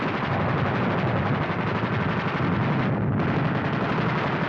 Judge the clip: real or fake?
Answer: real